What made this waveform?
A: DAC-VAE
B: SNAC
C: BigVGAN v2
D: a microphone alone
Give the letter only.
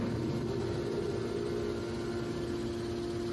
D